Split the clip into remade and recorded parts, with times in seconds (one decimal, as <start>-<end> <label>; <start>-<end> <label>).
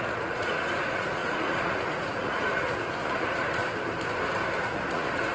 0.0-3.6 remade; 3.6-4.6 recorded; 4.6-5.3 remade